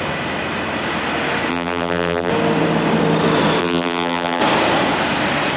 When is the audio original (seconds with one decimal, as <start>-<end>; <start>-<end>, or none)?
0.0-1.5; 2.3-3.6; 4.4-5.6